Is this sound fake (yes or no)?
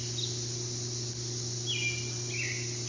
no